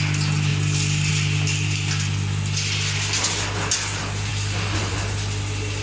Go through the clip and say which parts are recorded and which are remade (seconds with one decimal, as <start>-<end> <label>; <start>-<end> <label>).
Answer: 0.0-4.3 recorded; 4.3-4.9 remade; 4.9-5.8 recorded